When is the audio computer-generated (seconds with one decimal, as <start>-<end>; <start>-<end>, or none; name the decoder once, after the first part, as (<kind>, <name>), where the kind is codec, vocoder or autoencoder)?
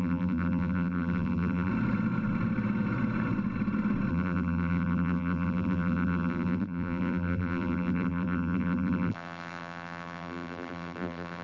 0.0-1.7 (vocoder, BigVGAN v2); 4.1-11.4